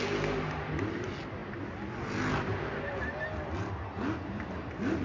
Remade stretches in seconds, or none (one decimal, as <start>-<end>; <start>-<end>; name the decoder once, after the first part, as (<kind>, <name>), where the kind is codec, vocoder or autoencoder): none